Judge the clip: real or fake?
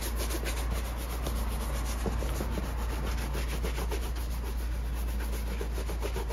real